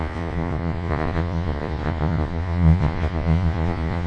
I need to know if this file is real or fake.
fake